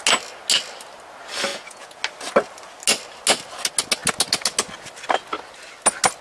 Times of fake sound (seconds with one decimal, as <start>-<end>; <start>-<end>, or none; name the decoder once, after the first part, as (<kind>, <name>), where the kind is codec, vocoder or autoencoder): 1.5-2.0 (vocoder, Vocos)